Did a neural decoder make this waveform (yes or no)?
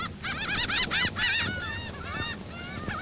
no